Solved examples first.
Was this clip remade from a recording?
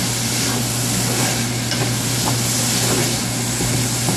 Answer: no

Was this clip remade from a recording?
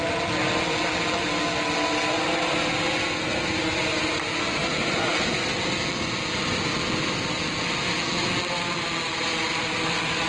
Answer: no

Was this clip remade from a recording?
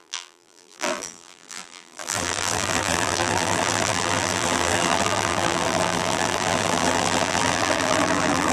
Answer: yes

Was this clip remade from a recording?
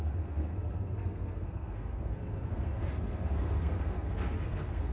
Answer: yes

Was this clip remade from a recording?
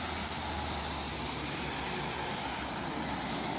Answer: no